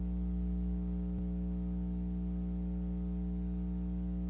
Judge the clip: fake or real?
real